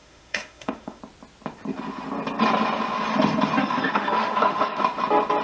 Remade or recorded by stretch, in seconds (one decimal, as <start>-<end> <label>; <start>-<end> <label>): 0.0-1.0 remade; 1.0-3.6 recorded; 3.6-4.8 remade; 4.8-5.4 recorded